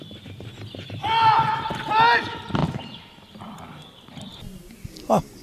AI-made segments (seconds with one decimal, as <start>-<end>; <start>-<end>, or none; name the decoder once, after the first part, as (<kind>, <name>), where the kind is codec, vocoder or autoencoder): none